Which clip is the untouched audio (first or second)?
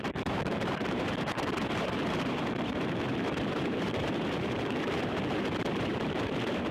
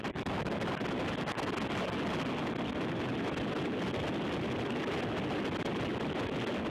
second